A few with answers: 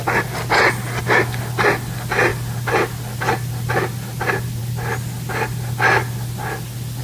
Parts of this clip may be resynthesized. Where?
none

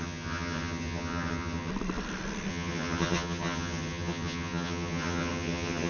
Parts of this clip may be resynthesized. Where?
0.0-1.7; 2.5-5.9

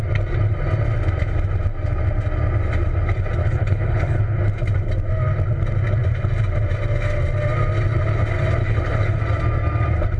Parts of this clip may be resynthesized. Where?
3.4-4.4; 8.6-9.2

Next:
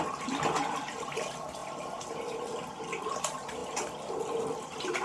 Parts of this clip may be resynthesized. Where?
0.0-3.6; 4.4-5.0